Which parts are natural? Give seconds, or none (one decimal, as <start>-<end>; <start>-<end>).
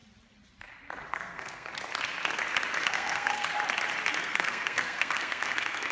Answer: 0.0-1.1; 1.7-2.9; 3.5-4.2